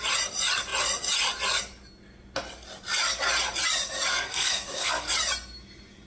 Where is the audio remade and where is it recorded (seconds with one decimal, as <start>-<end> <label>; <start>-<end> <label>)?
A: 0.0-4.1 recorded; 4.1-5.1 remade; 5.1-6.1 recorded